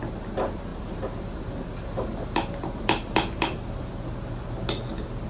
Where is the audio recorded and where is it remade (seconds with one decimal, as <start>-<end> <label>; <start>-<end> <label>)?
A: 0.0-0.7 recorded; 0.7-3.9 remade; 3.9-5.3 recorded